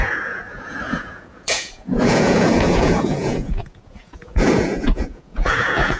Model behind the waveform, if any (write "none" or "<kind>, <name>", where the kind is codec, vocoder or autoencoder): vocoder, Vocos